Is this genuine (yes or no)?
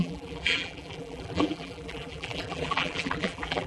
no